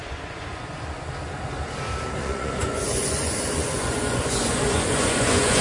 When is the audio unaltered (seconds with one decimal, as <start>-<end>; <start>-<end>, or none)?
1.1-2.2